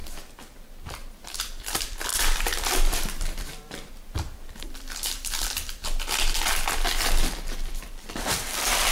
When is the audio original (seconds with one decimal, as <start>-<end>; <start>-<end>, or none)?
0.0-1.2; 5.8-7.2